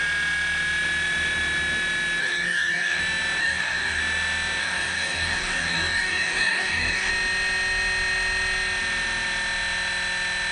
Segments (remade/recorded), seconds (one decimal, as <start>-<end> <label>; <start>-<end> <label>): 0.0-2.2 recorded; 2.2-3.0 remade; 3.0-3.4 recorded; 3.4-4.0 remade; 4.0-4.6 recorded; 4.6-7.1 remade; 7.1-10.5 recorded